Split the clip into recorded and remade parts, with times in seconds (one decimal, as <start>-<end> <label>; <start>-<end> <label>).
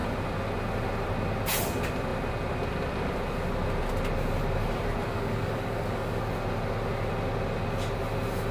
0.0-5.0 recorded; 5.0-6.2 remade; 6.2-8.5 recorded